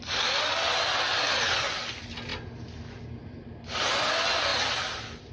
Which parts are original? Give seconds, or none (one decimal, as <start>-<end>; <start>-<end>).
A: 0.0-4.5